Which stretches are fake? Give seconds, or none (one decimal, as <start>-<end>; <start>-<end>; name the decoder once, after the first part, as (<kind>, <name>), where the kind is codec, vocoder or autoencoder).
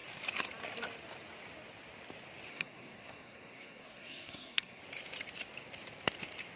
2.5-4.8 (codec, SNAC)